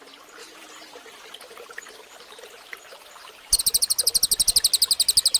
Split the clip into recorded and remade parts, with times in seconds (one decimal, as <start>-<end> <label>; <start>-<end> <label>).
0.0-0.4 recorded; 0.4-3.6 remade; 3.6-5.4 recorded